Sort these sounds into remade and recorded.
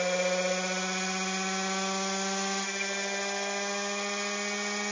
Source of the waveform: recorded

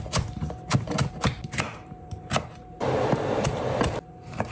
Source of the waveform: remade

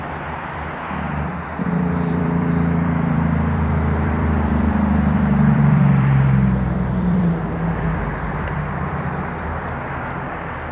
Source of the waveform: remade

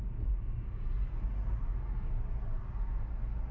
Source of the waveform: recorded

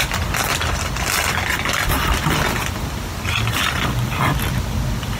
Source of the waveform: recorded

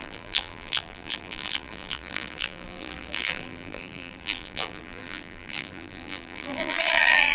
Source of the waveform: remade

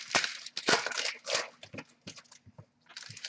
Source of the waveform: recorded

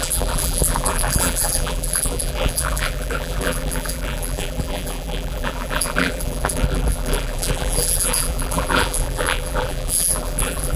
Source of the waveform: remade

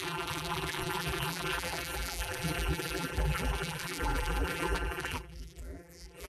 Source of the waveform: remade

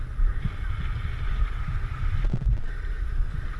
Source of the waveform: recorded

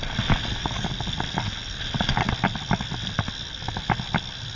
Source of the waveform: recorded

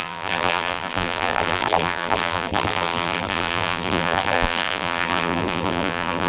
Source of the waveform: remade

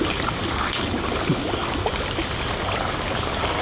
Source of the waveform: recorded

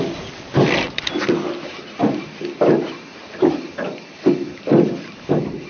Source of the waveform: recorded